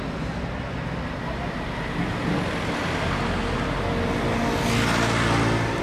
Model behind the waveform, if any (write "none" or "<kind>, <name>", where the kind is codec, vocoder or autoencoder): none